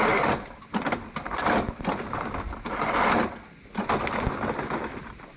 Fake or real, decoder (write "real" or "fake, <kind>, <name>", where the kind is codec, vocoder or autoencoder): real